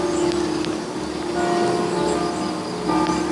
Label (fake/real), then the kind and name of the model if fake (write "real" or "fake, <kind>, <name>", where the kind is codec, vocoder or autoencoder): real